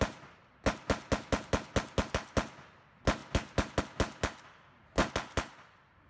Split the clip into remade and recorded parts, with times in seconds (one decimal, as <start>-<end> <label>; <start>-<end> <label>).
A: 0.0-6.1 recorded